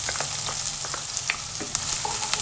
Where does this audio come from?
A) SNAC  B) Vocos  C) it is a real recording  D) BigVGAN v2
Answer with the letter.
C